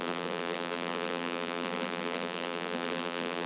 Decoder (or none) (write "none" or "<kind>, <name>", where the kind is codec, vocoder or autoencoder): vocoder, BigVGAN v2